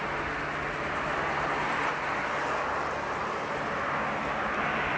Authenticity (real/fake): real